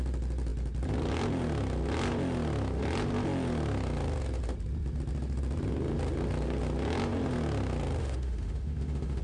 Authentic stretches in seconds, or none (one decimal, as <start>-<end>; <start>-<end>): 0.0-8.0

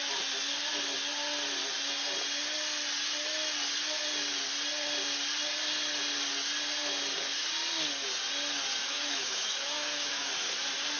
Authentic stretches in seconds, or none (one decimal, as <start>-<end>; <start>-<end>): 0.0-8.8; 10.3-11.0

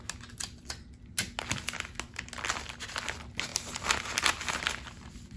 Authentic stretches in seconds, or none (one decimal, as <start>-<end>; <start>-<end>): 0.0-5.4

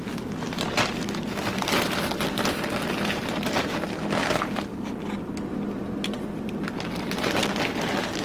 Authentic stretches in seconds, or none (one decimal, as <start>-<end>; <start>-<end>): 0.0-8.2